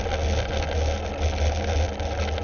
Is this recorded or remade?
recorded